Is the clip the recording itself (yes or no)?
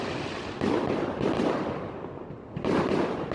yes